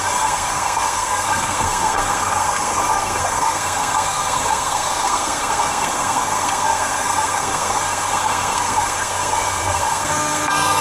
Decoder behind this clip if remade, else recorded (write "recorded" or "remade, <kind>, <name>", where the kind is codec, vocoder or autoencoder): remade, codec, SNAC